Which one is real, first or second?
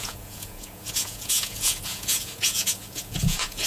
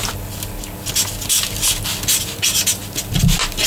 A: second